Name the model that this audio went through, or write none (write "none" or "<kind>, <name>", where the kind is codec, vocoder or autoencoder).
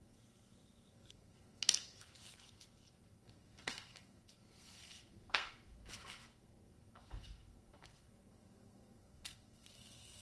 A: codec, SNAC